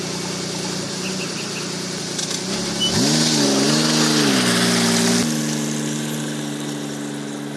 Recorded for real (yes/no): yes